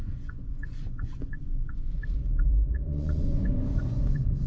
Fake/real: fake